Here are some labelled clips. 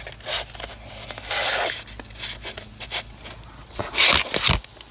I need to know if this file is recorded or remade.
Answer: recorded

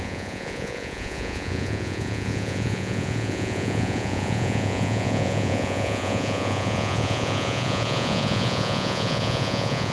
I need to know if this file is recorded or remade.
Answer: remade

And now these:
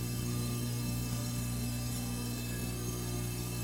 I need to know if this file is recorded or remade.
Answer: remade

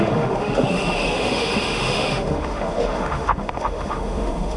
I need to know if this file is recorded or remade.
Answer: remade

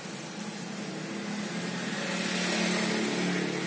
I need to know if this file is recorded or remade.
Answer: recorded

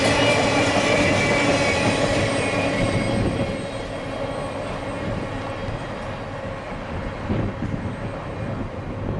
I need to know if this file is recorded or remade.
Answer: recorded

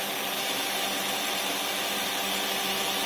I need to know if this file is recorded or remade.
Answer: recorded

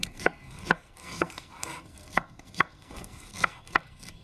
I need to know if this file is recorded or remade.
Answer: remade